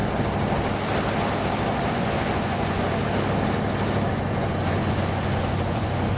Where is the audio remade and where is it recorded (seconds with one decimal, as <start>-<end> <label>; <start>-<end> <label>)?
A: 0.0-1.9 recorded; 1.9-3.0 remade; 3.0-4.1 recorded; 4.1-6.2 remade